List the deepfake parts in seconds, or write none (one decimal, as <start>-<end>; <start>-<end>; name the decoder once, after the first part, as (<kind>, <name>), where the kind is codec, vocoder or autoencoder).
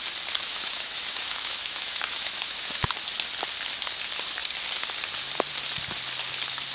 0.5-2.9 (autoencoder, DAC-VAE)